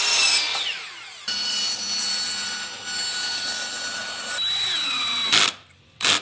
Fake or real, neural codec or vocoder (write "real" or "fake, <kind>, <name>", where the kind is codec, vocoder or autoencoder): real